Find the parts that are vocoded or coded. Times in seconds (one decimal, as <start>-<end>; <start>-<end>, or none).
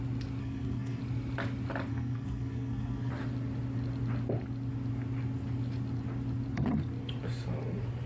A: 0.4-1.0; 1.9-3.1